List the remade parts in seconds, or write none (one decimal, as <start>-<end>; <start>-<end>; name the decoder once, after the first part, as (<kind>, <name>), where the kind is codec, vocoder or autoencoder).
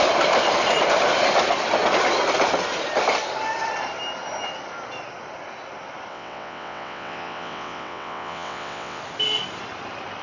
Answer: 6.1-9.0 (vocoder, WaveNeXt)